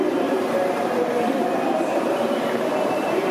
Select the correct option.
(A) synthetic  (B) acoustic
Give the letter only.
A